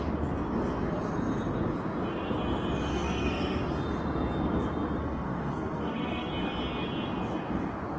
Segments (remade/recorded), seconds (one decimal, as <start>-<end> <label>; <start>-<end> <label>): 0.0-2.9 recorded; 2.9-3.6 remade; 3.6-5.0 recorded; 5.0-6.3 remade; 6.3-8.0 recorded

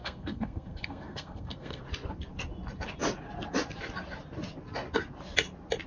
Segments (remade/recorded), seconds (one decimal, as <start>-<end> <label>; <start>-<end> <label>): 0.0-1.8 remade; 1.8-5.9 recorded

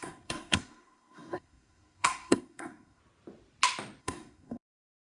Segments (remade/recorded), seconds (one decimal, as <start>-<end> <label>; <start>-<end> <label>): 0.0-3.0 remade; 3.0-4.0 recorded; 4.0-5.1 remade

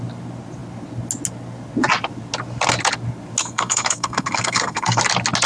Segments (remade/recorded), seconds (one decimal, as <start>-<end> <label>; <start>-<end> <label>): 0.0-3.4 recorded; 3.4-5.0 remade; 5.0-5.5 recorded

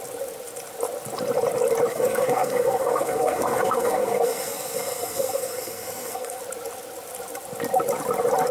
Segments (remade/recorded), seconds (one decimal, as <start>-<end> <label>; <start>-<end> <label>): 0.0-1.9 recorded; 1.9-6.4 remade; 6.4-8.5 recorded

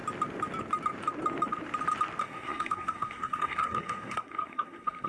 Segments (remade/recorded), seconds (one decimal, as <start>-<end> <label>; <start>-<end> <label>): 0.0-2.2 recorded; 2.2-5.1 remade

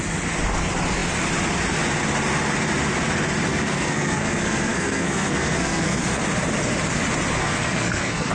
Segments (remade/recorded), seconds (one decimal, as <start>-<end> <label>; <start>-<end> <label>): 0.0-3.5 recorded; 3.5-6.0 remade; 6.0-7.4 recorded; 7.4-8.3 remade

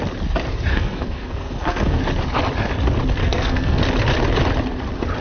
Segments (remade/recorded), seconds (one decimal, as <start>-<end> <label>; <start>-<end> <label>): 0.0-0.7 recorded; 0.7-2.0 remade; 2.0-3.2 recorded; 3.2-3.8 remade; 3.8-5.2 recorded